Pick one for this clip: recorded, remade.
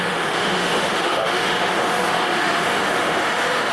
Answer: remade